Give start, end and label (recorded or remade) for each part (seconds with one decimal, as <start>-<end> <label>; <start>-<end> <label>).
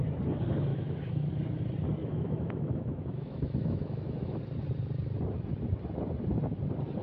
0.0-0.7 recorded; 0.7-1.3 remade; 1.3-2.0 recorded; 2.0-4.4 remade; 4.4-7.0 recorded